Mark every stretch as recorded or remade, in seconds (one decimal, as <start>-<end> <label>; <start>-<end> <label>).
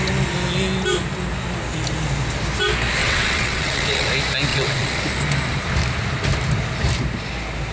0.0-3.0 recorded; 3.0-4.1 remade; 4.1-4.5 recorded; 4.5-5.0 remade; 5.0-7.7 recorded